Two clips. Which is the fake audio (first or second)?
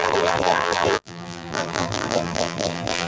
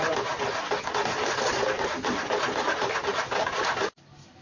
first